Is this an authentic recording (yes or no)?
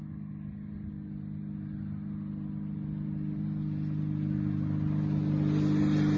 yes